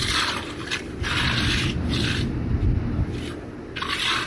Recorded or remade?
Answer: recorded